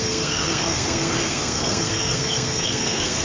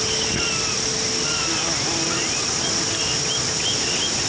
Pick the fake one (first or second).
first